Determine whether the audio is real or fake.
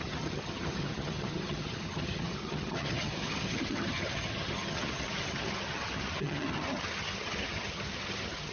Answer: fake